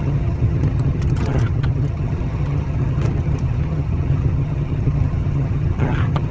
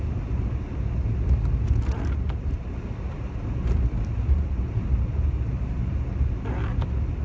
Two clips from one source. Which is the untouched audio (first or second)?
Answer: second